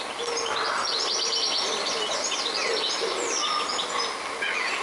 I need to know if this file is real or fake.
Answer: real